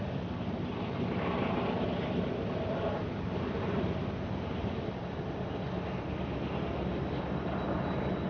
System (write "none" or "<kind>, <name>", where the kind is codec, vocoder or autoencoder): none